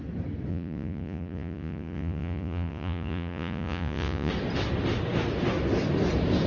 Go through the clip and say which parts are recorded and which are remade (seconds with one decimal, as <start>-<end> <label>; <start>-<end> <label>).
0.0-0.5 recorded; 0.5-4.3 remade; 4.3-6.5 recorded